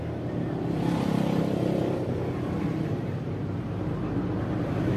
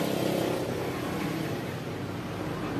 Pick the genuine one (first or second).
second